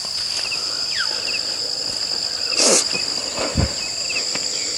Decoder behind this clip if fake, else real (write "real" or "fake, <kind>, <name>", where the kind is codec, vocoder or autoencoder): real